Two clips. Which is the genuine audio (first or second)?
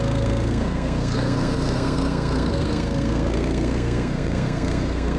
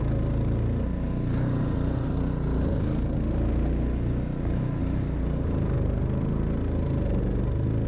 second